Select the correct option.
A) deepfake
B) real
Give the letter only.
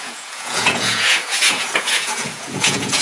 A